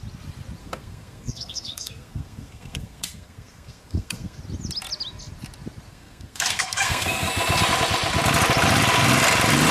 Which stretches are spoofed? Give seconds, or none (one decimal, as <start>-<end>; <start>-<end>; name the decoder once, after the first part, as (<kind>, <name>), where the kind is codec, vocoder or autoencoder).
0.6-4.4 (codec, SNAC); 5.9-7.3